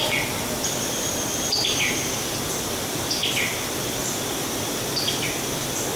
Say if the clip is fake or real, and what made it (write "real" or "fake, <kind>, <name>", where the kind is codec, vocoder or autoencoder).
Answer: real